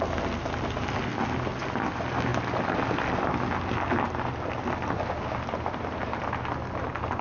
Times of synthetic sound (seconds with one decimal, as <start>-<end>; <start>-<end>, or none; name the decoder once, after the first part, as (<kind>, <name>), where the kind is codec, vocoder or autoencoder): none